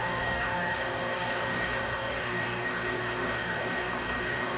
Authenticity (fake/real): fake